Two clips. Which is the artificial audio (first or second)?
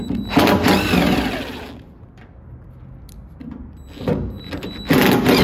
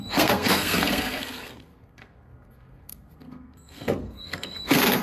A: second